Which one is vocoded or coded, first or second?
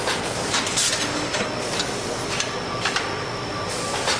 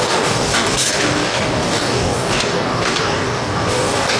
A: second